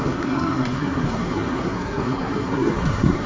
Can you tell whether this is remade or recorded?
remade